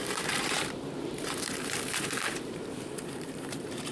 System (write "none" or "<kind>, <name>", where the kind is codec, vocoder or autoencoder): vocoder, BigVGAN v2